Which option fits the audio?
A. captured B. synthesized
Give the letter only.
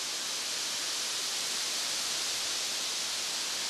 A